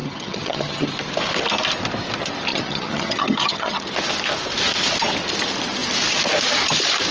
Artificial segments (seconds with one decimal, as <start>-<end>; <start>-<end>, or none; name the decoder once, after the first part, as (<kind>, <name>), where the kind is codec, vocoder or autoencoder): 0.0-0.9 (vocoder, HiFi-GAN); 2.5-3.8